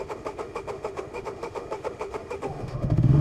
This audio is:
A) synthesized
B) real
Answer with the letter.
A